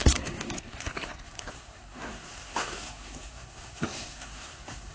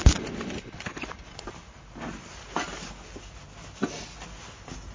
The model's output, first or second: first